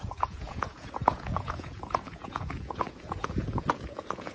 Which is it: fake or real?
fake